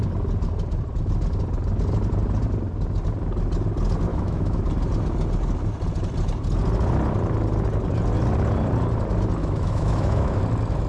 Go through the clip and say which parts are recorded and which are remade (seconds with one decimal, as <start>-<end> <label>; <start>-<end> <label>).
0.0-4.1 recorded; 4.1-4.6 remade; 4.6-9.4 recorded; 9.4-10.4 remade; 10.4-10.9 recorded